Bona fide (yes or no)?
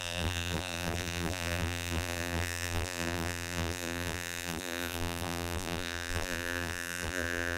no